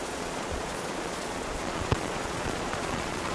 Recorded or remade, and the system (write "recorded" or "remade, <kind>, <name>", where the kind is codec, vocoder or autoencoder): remade, vocoder, Vocos